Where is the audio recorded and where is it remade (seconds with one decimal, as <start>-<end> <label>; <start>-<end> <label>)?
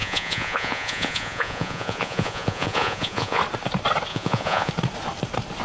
0.0-3.4 remade; 3.4-4.1 recorded; 4.1-4.7 remade; 4.7-5.6 recorded